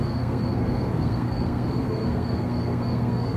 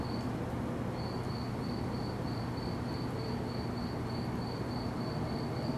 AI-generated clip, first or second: first